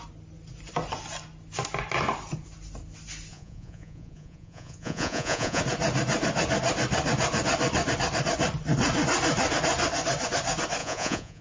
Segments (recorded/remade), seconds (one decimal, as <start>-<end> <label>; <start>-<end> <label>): 0.0-3.3 recorded; 3.3-5.6 remade; 5.6-10.8 recorded; 10.8-11.4 remade